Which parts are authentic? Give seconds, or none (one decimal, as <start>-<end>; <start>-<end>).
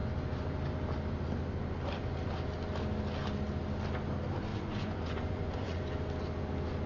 0.0-4.5; 5.8-6.9